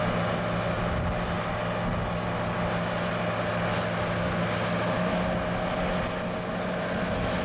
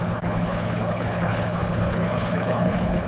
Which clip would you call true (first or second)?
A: first